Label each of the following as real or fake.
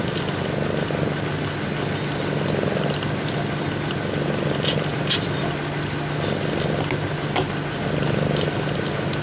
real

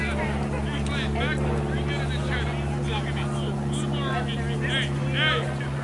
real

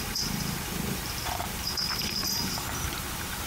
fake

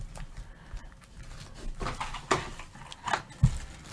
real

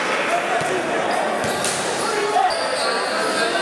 real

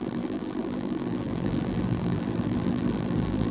fake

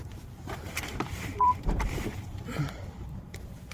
fake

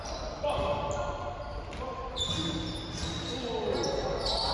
real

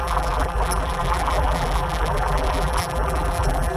fake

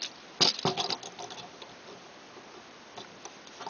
real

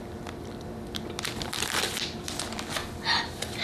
real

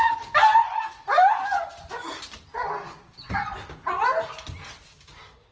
real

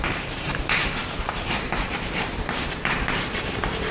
fake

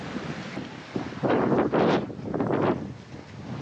real